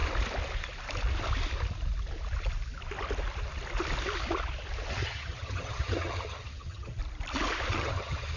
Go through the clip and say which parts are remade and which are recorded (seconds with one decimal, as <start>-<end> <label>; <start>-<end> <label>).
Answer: 0.0-4.9 recorded; 4.9-7.0 remade; 7.0-7.7 recorded; 7.7-8.4 remade